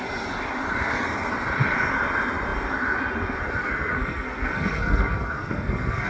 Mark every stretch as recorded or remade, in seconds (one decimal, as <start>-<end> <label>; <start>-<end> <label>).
0.0-3.6 recorded; 3.6-6.1 remade